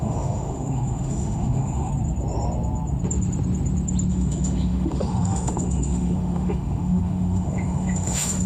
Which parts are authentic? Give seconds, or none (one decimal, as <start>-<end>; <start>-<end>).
1.9-4.1